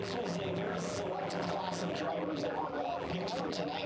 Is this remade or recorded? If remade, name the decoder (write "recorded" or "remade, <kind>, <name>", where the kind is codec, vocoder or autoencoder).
remade, vocoder, BigVGAN v2